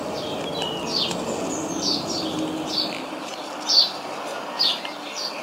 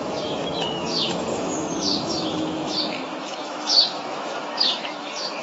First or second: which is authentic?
first